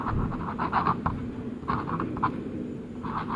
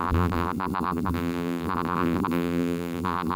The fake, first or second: second